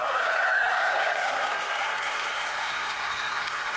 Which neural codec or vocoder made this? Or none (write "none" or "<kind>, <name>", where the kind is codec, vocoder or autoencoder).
codec, SNAC